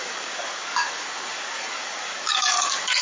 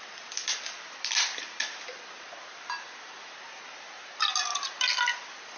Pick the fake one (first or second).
first